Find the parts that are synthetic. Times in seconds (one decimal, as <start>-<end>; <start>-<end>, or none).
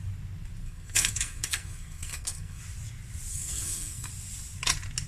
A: 0.6-2.6; 3.3-4.1